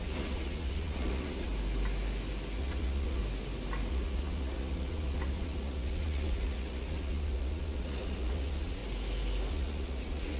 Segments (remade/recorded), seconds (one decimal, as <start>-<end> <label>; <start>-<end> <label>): 0.0-1.5 remade; 1.5-2.6 recorded; 2.6-3.2 remade; 3.2-3.9 recorded; 3.9-8.8 remade; 8.8-9.5 recorded; 9.5-10.4 remade